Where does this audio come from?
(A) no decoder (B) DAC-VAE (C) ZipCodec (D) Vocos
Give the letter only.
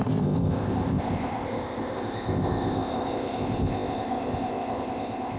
C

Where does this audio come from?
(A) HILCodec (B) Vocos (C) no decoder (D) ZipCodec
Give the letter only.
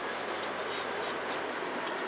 C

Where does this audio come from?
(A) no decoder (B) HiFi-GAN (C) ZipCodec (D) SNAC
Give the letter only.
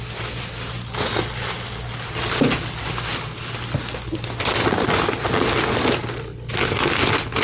A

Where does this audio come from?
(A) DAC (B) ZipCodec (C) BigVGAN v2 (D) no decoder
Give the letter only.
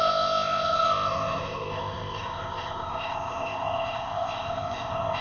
B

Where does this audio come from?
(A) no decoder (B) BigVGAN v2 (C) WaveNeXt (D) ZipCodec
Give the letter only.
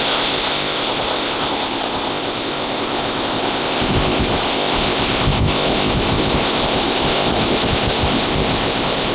D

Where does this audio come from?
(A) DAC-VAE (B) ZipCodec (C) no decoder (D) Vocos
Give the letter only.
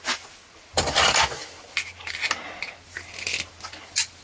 C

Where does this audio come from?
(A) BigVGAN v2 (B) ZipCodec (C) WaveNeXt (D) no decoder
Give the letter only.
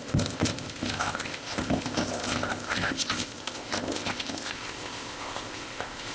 B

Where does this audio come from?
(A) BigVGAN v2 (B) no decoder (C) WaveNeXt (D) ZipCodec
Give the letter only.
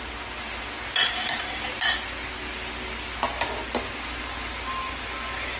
B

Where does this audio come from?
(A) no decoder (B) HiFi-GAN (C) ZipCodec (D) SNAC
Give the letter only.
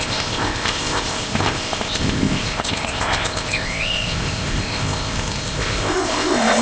C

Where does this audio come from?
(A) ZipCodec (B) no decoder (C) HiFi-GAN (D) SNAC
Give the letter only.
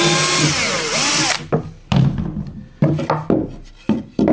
B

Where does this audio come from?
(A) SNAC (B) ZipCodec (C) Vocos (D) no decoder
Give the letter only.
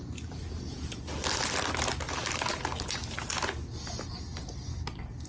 D